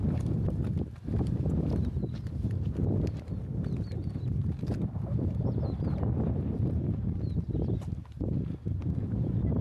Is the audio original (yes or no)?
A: yes